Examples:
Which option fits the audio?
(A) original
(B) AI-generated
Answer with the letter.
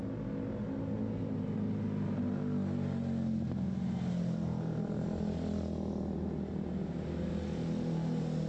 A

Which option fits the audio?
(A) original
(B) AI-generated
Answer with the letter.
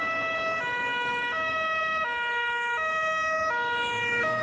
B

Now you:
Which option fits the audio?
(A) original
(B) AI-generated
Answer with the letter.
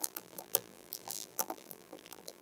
B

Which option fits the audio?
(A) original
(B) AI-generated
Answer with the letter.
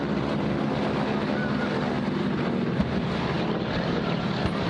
A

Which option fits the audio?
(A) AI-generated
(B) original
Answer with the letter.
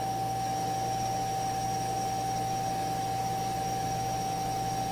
A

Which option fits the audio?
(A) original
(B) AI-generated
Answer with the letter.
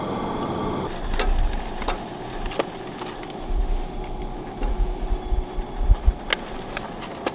A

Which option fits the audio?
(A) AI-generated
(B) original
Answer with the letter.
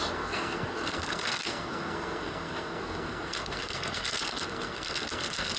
A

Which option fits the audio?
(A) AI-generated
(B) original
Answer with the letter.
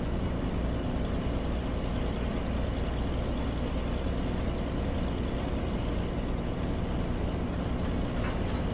B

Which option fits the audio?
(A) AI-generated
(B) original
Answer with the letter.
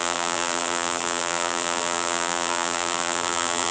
A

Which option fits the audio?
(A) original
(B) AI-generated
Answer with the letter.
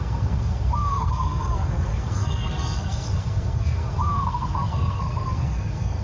B